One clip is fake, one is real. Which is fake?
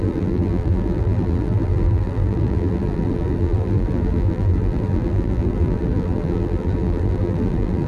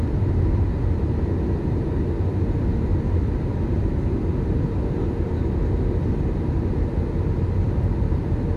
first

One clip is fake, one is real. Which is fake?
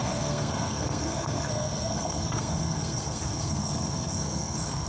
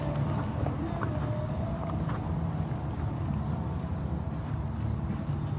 first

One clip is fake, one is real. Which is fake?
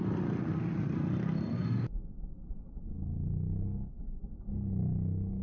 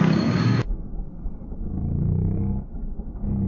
second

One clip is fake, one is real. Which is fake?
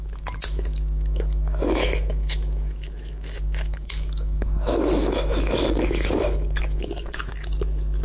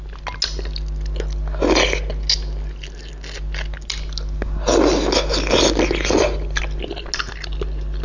first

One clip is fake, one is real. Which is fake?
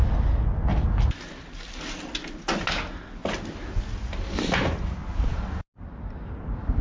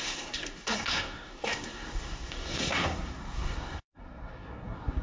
second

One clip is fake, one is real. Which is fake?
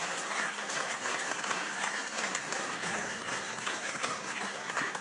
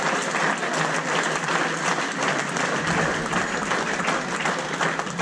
first